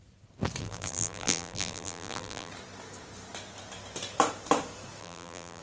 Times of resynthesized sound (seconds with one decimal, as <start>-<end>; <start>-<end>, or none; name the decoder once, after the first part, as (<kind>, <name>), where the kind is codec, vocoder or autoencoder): 0.6-2.5 (vocoder, BigVGAN v2); 5.0-5.6